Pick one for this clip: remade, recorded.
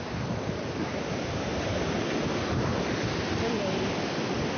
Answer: recorded